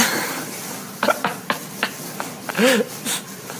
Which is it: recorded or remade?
recorded